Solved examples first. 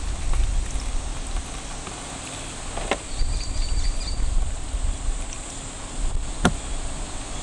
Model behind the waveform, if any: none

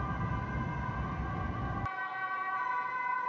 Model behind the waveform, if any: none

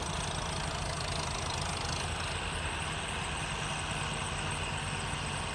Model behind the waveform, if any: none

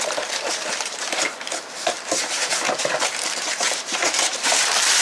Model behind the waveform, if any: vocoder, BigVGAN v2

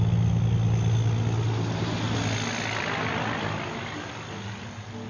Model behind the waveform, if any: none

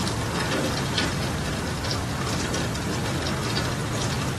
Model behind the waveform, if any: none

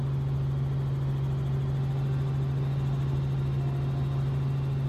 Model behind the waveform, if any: none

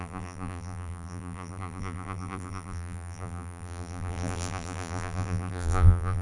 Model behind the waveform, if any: vocoder, BigVGAN v2